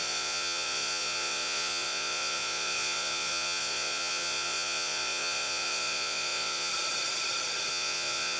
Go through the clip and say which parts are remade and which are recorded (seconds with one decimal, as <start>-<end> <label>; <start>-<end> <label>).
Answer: 0.0-6.7 remade; 6.7-7.7 recorded; 7.7-8.4 remade